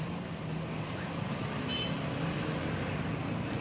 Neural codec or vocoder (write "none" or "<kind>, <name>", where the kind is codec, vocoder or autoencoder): none